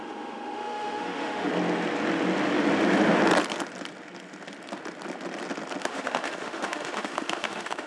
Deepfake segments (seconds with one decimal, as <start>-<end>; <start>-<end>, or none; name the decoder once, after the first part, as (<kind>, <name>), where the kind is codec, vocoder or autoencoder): 0.0-1.5 (autoencoder, DAC-VAE); 5.8-7.9